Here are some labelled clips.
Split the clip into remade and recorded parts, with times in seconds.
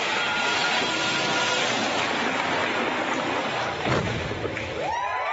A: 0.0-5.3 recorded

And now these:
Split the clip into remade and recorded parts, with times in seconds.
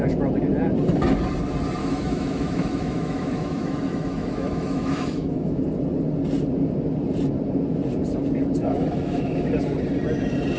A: 0.0-1.8 recorded; 1.8-5.6 remade; 5.6-8.6 recorded; 8.6-9.5 remade; 9.5-10.6 recorded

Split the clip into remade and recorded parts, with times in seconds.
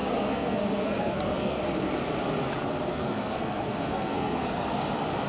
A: 0.0-1.6 remade; 1.6-2.9 recorded; 2.9-4.8 remade; 4.8-5.3 recorded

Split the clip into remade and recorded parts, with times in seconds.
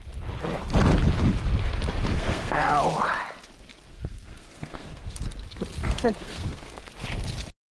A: 0.0-2.1 recorded; 2.1-2.7 remade; 2.7-3.9 recorded; 3.9-5.2 remade; 5.2-5.8 recorded; 5.8-6.9 remade; 6.9-7.7 recorded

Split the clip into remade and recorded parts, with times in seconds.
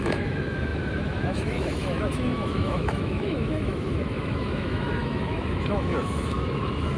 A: 0.0-7.0 remade